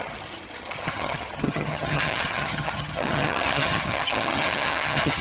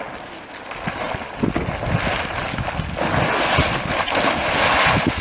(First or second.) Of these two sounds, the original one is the second